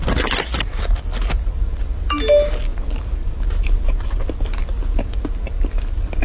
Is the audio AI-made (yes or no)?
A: no